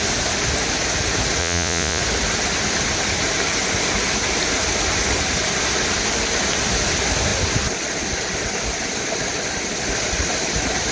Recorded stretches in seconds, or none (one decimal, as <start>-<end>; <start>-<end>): 0.0-1.4; 2.0-10.9